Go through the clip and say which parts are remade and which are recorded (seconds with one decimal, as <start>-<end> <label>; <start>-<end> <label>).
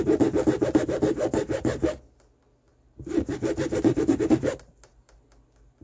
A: 0.0-5.8 recorded